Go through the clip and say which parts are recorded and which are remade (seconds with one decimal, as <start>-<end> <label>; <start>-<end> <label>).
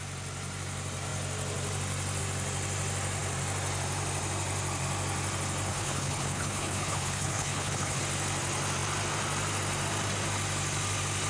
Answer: 0.0-5.7 recorded; 5.7-8.0 remade; 8.0-11.3 recorded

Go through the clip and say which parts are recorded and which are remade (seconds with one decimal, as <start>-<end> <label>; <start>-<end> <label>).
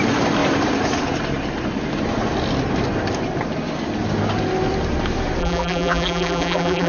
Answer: 0.0-5.4 recorded; 5.4-6.9 remade